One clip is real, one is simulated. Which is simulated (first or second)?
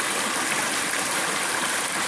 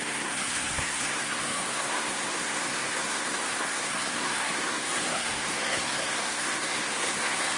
second